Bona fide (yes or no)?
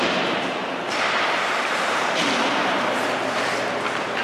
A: no